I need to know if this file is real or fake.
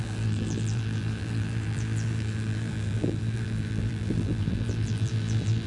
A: fake